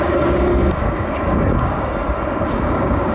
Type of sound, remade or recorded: remade